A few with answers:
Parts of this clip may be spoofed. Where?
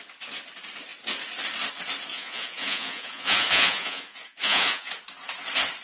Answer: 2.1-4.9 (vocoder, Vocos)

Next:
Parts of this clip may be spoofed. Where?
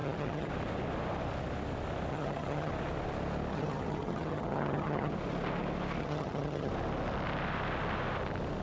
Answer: 0.0-0.5 (vocoder, HiFi-GAN); 2.1-2.7; 3.5-5.1; 6.0-6.7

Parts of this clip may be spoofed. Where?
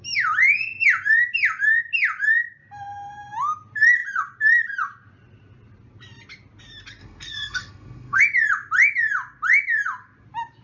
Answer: 7.0-8.2 (codec, SNAC)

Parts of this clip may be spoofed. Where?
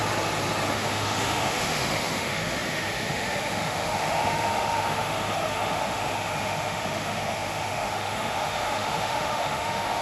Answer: 0.7-10.0 (autoencoder, DAC-VAE)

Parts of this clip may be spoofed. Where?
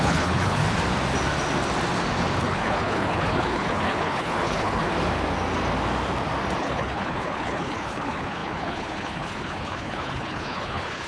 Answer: 0.0-0.6 (codec, HILCodec); 2.4-4.9; 6.6-11.1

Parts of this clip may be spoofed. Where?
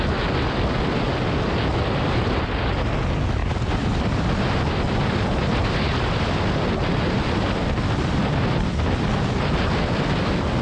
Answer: none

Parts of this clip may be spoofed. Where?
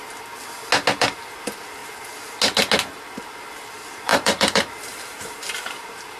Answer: 1.0-1.8 (vocoder, BigVGAN v2); 3.2-6.2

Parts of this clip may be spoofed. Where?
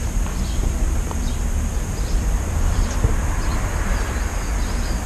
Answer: 0.6-2.8 (vocoder, BigVGAN v2); 3.5-4.1